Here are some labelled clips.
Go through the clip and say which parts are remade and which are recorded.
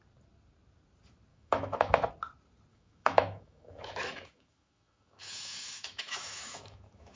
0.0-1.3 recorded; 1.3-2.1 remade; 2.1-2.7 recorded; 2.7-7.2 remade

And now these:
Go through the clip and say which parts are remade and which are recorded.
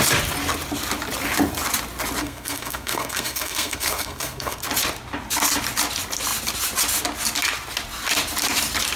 0.0-2.2 recorded; 2.2-4.6 remade; 4.6-9.0 recorded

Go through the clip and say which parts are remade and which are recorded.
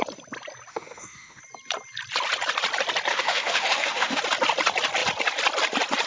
0.0-0.7 recorded; 0.7-1.4 remade; 1.4-3.1 recorded; 3.1-4.2 remade; 4.2-6.1 recorded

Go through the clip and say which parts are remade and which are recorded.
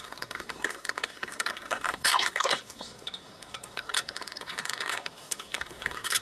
0.0-6.2 remade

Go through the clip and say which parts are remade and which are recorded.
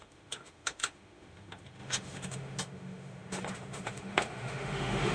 0.0-5.1 remade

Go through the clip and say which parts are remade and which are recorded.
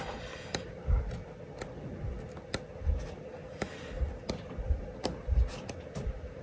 0.0-1.2 remade; 1.2-5.0 recorded; 5.0-5.4 remade; 5.4-6.0 recorded; 6.0-6.4 remade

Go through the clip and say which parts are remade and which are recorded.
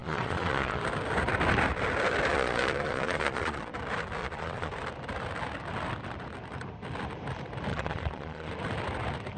0.0-0.8 remade; 0.8-2.3 recorded; 2.3-3.7 remade; 3.7-4.2 recorded; 4.2-4.7 remade; 4.7-7.7 recorded; 7.7-8.5 remade; 8.5-9.4 recorded